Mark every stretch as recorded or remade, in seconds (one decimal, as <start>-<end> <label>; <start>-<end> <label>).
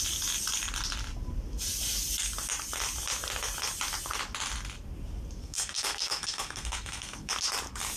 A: 0.0-5.4 recorded; 5.4-7.3 remade; 7.3-8.0 recorded